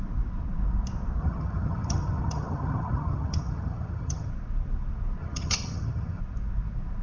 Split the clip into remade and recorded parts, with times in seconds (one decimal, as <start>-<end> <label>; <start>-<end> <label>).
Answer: 0.0-1.2 recorded; 1.2-4.3 remade; 4.3-5.2 recorded; 5.2-6.2 remade; 6.2-7.0 recorded